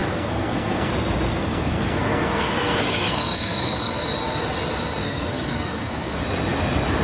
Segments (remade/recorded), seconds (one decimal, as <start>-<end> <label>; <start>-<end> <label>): 0.0-0.9 remade; 0.9-1.3 recorded; 1.3-4.1 remade; 4.1-5.0 recorded; 5.0-6.2 remade; 6.2-7.0 recorded